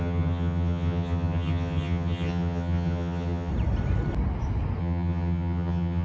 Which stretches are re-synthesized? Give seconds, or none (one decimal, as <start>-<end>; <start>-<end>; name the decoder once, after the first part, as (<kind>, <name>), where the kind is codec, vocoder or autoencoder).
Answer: 0.0-3.5 (vocoder, HiFi-GAN); 4.8-6.0